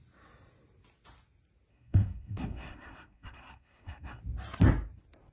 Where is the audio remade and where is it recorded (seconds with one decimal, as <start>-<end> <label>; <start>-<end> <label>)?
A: 0.0-1.7 recorded; 1.7-4.2 remade; 4.2-5.3 recorded